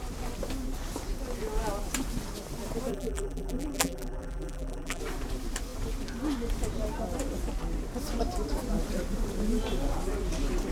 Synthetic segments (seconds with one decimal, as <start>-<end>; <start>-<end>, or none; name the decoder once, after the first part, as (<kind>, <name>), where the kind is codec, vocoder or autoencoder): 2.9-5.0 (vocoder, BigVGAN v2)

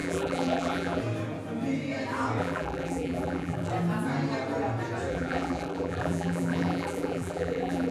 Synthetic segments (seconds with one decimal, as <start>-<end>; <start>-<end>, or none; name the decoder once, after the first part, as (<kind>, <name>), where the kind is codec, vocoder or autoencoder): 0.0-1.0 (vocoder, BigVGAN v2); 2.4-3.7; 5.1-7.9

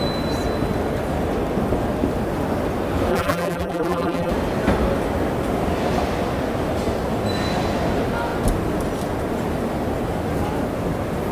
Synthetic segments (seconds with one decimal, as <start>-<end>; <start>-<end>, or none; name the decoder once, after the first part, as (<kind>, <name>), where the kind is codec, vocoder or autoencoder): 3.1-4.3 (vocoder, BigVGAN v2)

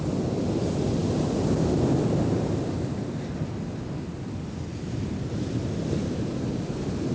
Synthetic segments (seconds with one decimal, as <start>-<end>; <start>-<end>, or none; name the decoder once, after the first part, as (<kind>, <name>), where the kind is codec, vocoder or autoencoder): none